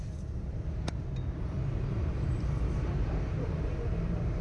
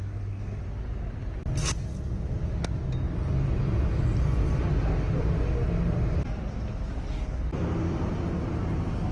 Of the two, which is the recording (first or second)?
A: second